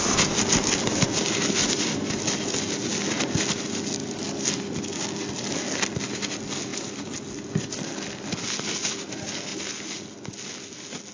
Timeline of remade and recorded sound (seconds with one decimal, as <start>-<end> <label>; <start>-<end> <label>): 0.0-4.0 recorded; 4.0-4.8 remade; 4.8-6.7 recorded; 6.7-7.2 remade; 7.2-11.1 recorded